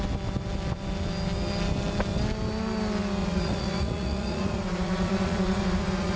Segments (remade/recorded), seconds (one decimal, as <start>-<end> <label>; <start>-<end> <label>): 0.0-3.2 recorded; 3.2-6.2 remade